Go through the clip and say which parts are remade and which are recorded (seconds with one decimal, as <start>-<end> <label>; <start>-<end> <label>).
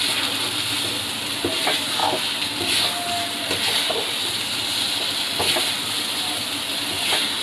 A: 0.0-7.4 recorded